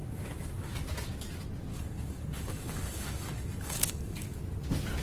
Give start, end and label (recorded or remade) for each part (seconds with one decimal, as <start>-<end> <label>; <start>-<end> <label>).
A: 0.0-0.7 remade; 0.7-1.7 recorded; 1.7-4.4 remade; 4.4-5.0 recorded